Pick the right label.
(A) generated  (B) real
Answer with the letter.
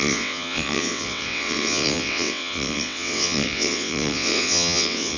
A